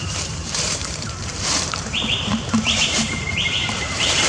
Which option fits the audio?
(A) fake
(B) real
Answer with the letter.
A